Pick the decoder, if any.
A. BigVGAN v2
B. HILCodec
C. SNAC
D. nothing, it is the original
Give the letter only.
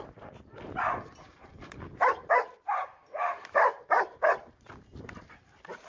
A